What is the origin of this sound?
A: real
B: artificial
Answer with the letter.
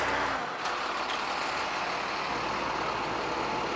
A